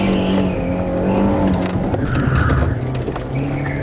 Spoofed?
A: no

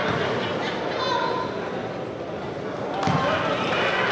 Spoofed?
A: no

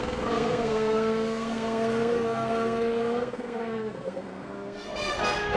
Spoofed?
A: yes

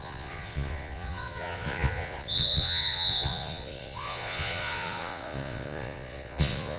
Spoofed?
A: yes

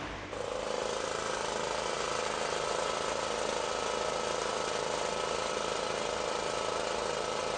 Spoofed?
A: no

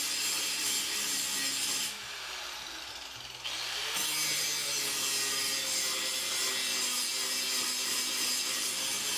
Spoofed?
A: no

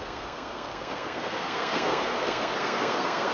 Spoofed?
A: yes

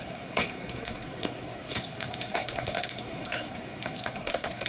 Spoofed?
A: yes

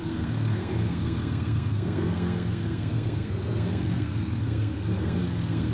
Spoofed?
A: yes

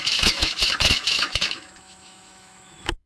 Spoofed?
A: yes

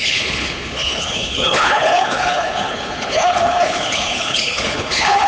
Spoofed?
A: yes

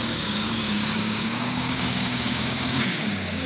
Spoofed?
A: yes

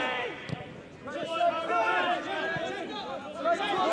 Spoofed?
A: no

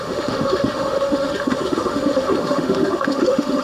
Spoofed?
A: yes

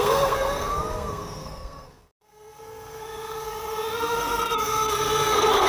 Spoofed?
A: yes